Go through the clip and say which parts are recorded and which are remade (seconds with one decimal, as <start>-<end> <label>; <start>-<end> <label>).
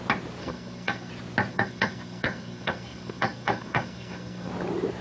0.0-0.4 recorded; 0.4-1.1 remade; 1.1-1.5 recorded; 1.5-4.5 remade; 4.5-5.0 recorded